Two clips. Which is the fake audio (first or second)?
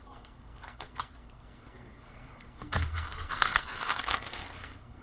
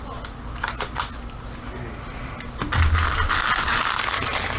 first